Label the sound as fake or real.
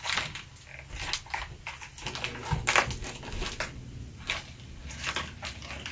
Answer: real